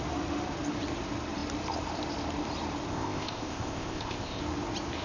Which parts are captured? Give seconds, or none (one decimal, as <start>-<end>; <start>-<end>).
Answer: 0.0-2.9; 4.4-5.0